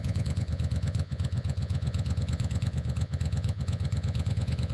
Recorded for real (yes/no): no